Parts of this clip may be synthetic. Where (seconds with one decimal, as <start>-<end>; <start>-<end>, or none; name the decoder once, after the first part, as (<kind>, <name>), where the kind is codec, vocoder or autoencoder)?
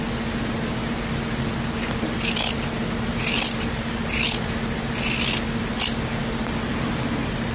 none